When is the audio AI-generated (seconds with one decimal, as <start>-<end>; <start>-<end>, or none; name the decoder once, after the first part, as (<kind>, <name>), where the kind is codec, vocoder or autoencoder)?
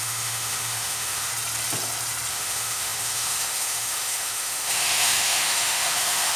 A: 0.0-1.3 (autoencoder, DAC-VAE); 2.3-6.4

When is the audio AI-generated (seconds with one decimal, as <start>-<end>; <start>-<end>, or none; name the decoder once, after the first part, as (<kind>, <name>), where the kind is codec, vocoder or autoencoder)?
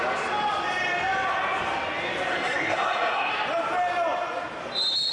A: 2.3-3.3 (codec, SNAC)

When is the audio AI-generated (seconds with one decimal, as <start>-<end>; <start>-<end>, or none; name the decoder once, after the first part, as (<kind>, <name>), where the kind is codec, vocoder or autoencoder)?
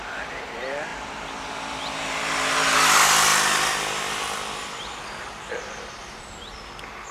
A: none